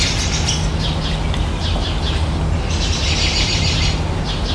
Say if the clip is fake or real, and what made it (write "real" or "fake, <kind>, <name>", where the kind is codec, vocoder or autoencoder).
real